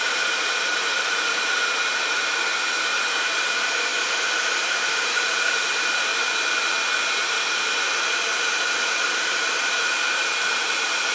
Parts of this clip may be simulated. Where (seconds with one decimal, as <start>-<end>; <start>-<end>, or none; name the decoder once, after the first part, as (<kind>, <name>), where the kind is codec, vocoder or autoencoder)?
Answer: 0.0-6.1 (vocoder, BigVGAN v2); 7.0-11.1